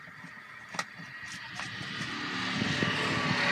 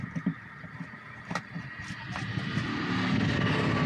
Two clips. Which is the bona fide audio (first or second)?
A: first